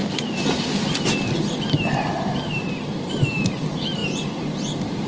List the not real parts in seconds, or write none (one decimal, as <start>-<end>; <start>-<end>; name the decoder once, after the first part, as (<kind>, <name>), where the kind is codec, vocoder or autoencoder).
none